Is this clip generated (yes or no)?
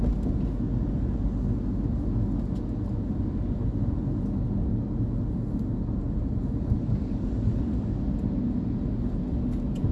no